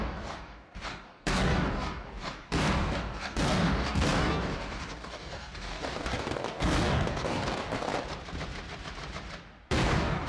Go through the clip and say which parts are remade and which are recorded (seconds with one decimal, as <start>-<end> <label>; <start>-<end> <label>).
0.0-7.9 remade; 7.9-9.7 recorded; 9.7-10.3 remade